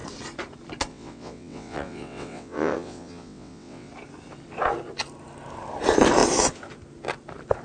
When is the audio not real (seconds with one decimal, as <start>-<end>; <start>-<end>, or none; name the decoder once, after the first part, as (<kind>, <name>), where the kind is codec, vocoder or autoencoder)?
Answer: 0.9-3.9 (vocoder, WaveNeXt)